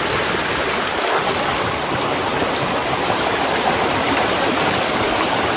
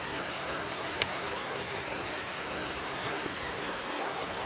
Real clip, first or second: first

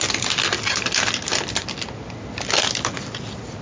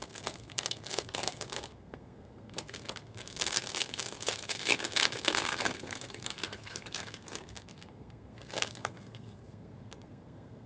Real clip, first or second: first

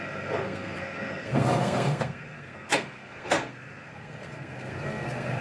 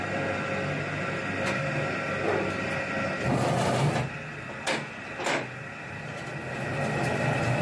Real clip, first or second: second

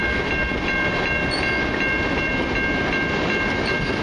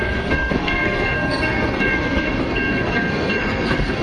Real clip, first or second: first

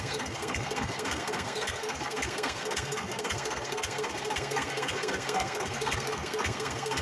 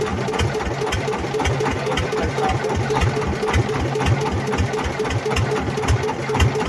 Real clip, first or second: second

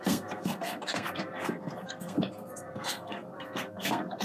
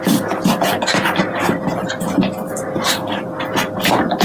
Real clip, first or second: second